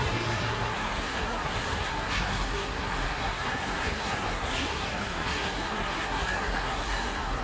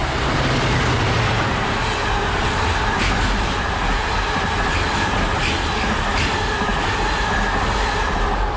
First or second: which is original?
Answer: second